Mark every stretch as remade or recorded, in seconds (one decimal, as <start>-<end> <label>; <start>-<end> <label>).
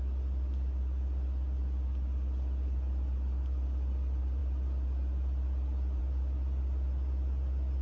0.0-7.8 recorded